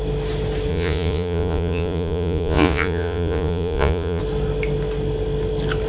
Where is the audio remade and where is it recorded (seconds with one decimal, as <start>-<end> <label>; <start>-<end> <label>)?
0.0-0.7 recorded; 0.7-4.2 remade; 4.2-5.9 recorded